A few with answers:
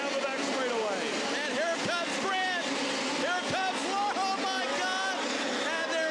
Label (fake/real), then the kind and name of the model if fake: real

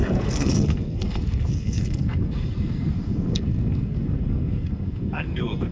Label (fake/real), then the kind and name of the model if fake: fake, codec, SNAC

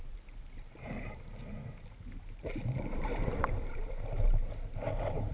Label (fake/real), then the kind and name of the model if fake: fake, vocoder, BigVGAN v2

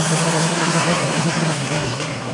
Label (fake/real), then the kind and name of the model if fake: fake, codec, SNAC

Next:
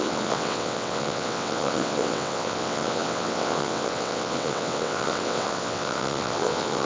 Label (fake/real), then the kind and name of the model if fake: fake, vocoder, WaveNeXt